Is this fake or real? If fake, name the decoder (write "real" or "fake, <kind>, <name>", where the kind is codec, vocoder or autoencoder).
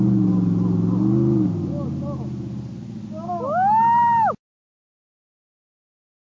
real